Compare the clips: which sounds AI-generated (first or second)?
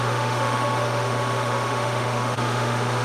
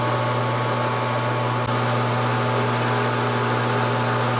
first